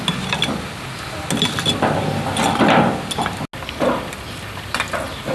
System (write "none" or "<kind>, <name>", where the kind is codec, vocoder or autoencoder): none